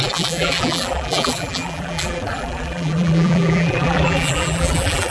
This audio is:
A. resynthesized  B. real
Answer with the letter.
A